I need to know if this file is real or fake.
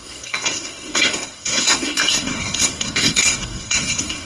fake